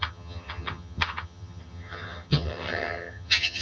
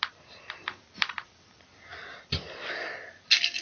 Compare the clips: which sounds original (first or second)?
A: second